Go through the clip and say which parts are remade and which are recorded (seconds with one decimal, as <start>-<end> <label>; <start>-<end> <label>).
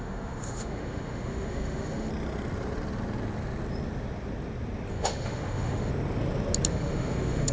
0.0-2.1 remade; 2.1-4.9 recorded; 4.9-5.9 remade; 5.9-6.7 recorded; 6.7-7.5 remade